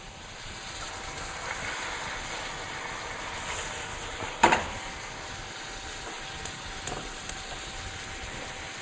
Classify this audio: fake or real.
real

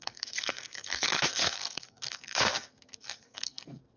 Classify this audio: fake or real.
fake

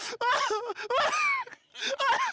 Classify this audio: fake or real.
real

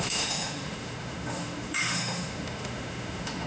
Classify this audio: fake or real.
fake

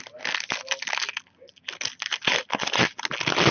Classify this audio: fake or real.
real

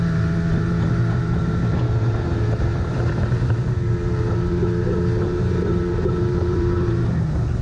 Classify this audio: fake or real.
fake